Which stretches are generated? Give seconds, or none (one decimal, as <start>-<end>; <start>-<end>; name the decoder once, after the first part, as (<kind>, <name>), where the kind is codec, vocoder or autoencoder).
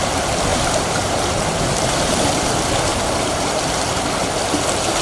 0.5-2.5 (vocoder, BigVGAN v2); 2.9-3.8